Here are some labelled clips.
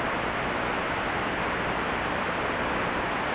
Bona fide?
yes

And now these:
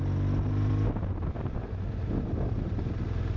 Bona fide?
yes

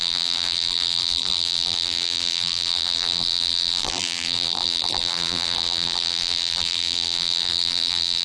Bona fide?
no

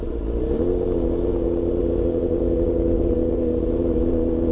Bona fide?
yes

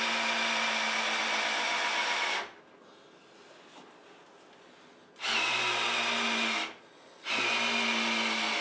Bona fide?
yes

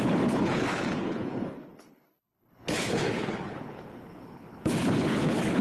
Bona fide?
no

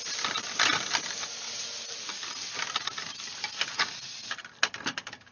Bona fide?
yes